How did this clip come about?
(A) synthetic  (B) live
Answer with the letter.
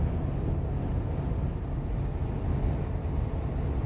B